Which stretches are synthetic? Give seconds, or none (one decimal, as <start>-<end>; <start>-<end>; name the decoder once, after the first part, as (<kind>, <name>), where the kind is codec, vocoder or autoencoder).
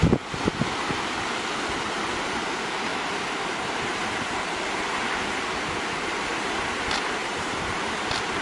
2.9-4.0 (vocoder, BigVGAN v2); 7.2-7.8